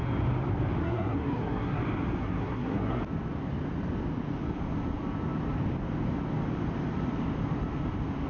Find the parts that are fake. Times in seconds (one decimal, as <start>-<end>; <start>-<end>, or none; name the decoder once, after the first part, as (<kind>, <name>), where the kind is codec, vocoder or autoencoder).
0.8-1.8 (codec, SNAC); 2.2-3.0